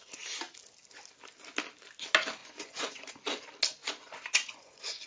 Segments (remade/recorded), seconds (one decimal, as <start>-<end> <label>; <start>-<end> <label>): 0.0-2.4 recorded; 2.4-3.1 remade; 3.1-3.8 recorded; 3.8-5.1 remade